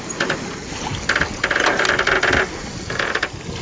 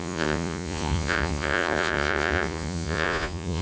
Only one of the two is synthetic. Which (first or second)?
second